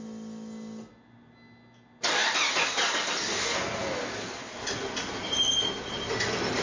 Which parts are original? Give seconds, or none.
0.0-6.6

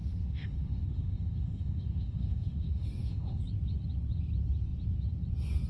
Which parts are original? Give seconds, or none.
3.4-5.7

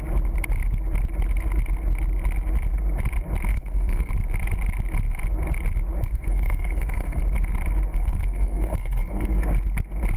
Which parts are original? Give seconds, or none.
0.0-3.5; 4.1-6.0; 7.2-7.9; 9.4-10.2